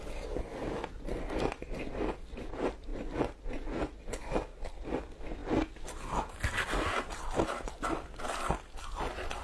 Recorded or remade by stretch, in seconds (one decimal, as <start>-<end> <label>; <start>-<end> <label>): 0.0-9.4 recorded